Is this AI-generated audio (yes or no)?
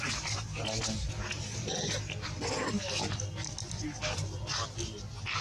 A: no